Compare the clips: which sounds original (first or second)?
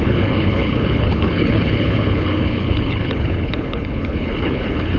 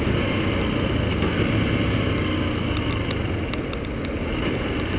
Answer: second